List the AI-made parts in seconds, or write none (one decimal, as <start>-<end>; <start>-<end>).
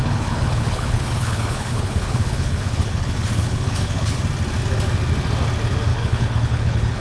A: 0.0-4.2; 5.9-7.0